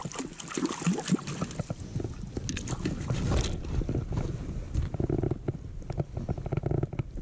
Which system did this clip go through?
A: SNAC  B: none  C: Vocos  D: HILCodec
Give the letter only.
B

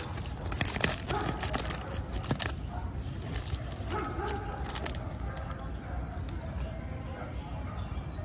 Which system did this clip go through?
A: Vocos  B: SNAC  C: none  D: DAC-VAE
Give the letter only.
C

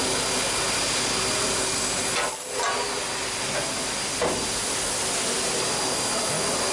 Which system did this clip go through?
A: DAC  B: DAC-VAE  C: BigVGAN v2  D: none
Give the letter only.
D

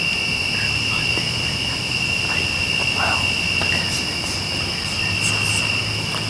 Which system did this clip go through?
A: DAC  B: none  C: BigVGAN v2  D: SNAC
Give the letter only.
B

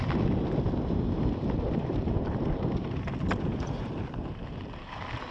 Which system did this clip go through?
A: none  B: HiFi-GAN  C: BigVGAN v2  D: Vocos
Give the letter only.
C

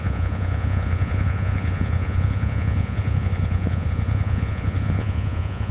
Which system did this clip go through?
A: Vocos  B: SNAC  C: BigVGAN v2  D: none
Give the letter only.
A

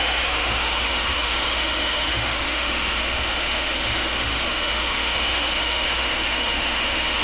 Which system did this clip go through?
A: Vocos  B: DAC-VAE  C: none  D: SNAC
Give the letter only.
B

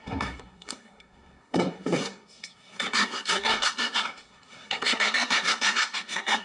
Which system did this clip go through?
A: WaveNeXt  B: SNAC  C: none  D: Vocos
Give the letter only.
B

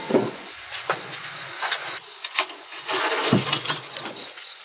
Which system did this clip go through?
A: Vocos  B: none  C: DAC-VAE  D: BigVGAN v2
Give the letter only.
A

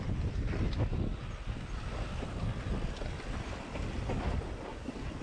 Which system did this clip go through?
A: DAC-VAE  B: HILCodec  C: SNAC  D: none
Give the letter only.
D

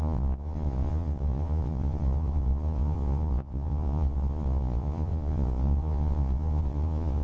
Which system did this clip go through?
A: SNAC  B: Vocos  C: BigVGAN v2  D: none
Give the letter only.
B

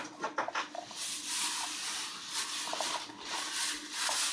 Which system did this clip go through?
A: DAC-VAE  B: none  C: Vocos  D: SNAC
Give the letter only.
B